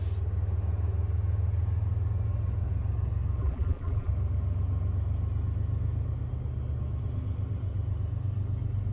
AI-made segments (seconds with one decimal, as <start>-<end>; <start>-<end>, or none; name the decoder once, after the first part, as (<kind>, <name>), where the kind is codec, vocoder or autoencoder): 3.4-4.1 (vocoder, BigVGAN v2)